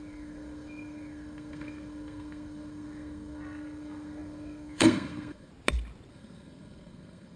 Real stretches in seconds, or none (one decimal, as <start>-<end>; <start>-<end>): 5.5-6.1